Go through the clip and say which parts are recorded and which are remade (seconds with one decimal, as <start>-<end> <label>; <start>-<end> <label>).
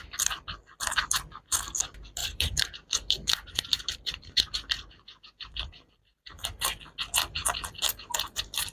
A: 0.0-2.2 recorded; 2.2-6.8 remade; 6.8-8.7 recorded